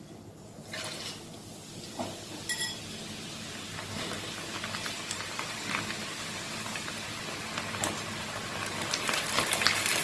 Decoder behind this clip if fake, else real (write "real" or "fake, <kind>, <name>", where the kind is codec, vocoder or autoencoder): real